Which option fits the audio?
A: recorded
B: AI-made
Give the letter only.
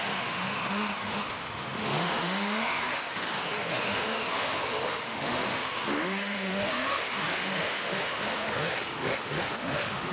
B